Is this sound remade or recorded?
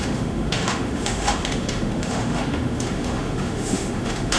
remade